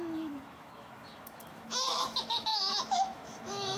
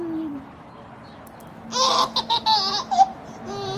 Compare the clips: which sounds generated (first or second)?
first